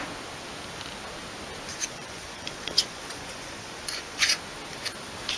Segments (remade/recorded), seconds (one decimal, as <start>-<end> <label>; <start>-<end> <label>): 0.0-1.7 recorded; 1.7-4.4 remade; 4.4-5.4 recorded